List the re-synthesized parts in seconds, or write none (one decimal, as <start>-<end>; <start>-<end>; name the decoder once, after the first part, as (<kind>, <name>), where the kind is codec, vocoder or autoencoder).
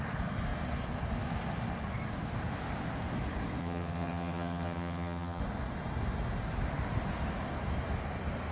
3.6-5.4 (vocoder, HiFi-GAN)